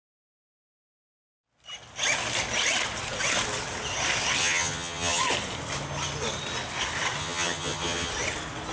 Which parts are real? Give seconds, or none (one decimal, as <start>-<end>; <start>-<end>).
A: 0.0-4.4; 5.2-7.2; 8.1-8.7